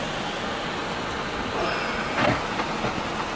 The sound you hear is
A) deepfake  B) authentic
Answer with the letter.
B